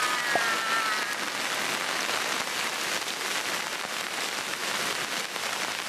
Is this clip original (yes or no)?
yes